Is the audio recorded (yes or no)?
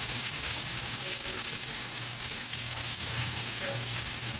no